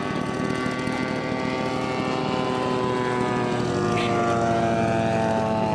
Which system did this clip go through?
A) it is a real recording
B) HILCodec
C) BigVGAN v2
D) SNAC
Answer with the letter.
A